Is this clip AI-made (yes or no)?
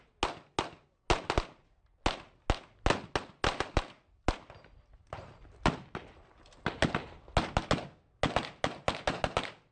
no